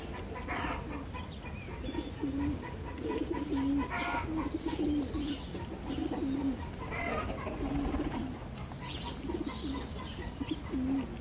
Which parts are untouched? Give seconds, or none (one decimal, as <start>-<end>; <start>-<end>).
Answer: none